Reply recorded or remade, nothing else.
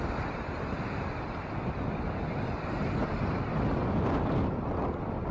recorded